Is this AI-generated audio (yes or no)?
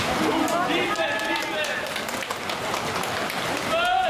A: no